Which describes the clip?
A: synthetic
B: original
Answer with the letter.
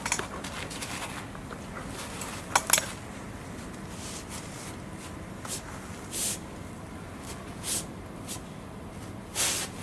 B